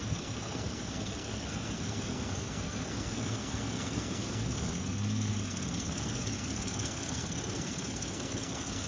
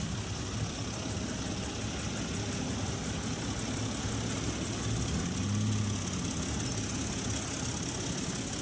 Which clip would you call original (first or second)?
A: second